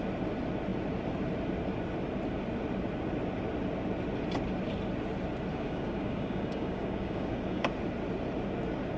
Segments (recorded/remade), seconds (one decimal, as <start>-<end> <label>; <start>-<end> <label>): 0.0-5.5 recorded; 5.5-7.7 remade; 7.7-9.0 recorded